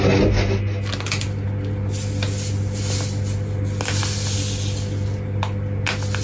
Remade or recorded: recorded